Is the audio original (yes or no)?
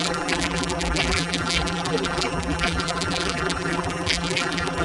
no